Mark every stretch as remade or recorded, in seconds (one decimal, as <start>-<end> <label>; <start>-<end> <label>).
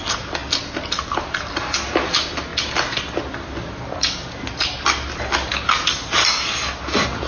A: 0.0-7.3 recorded